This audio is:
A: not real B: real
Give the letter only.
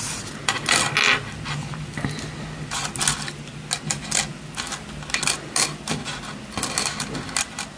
B